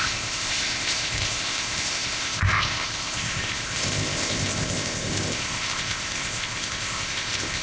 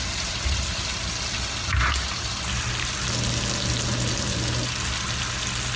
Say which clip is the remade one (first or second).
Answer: first